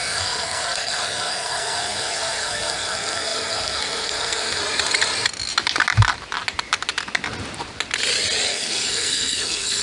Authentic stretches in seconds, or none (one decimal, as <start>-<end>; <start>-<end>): 4.6-8.5